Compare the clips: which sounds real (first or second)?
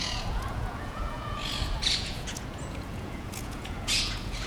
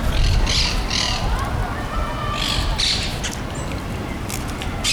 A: second